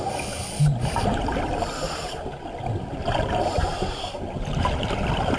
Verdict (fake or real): real